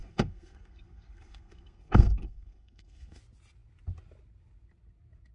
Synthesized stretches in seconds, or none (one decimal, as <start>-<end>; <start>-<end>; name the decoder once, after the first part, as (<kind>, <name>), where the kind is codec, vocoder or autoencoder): 0.0-3.2 (codec, SNAC)